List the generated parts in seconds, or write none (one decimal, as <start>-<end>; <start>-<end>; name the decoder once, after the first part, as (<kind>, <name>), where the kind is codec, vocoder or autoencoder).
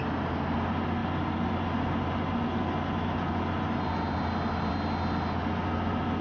none